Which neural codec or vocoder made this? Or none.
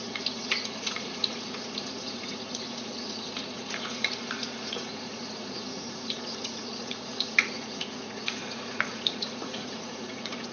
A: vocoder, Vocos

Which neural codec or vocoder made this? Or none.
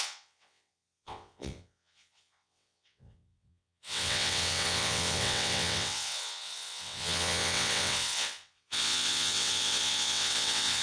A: vocoder, WaveNeXt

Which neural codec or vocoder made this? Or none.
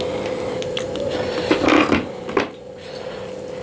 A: none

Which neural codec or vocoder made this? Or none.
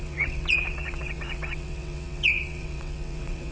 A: vocoder, WaveNeXt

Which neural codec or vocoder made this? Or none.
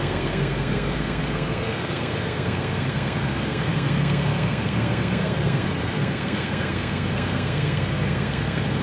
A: codec, SNAC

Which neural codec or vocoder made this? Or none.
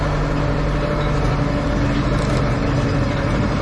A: none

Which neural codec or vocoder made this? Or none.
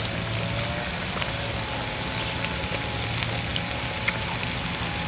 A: none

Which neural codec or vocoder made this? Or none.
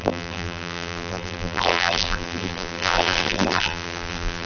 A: vocoder, BigVGAN v2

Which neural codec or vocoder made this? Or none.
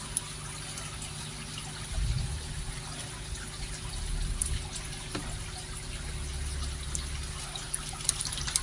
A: none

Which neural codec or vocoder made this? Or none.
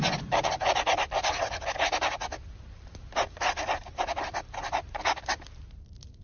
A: none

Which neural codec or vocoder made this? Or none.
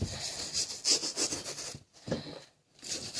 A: none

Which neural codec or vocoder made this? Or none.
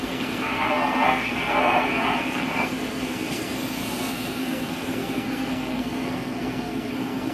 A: codec, SNAC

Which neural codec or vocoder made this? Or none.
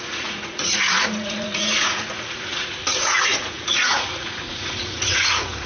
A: vocoder, Vocos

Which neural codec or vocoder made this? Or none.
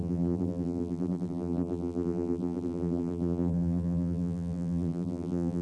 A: vocoder, BigVGAN v2